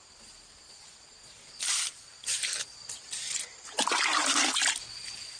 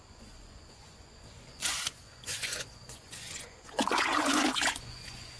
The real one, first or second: first